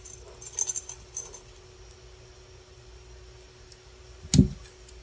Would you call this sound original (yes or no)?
yes